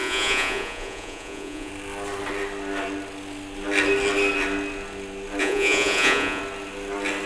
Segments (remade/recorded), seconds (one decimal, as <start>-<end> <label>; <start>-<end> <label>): 0.0-1.7 remade; 1.7-5.4 recorded; 5.4-6.4 remade; 6.4-7.3 recorded